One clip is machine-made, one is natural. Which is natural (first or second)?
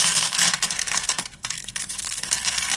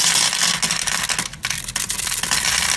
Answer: second